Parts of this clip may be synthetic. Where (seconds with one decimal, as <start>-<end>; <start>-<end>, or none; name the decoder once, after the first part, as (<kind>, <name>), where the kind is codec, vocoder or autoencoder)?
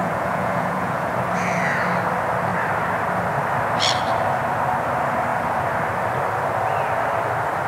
0.0-1.1 (vocoder, Vocos)